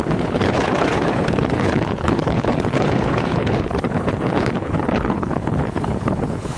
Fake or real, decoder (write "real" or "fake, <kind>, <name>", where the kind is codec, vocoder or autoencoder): fake, codec, HILCodec